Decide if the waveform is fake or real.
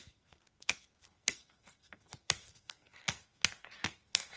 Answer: fake